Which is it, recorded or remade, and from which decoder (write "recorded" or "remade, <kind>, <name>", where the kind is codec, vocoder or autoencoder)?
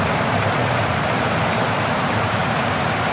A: remade, vocoder, BigVGAN v2